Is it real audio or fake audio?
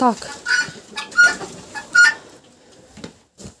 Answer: real